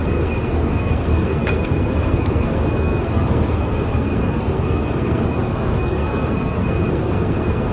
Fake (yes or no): yes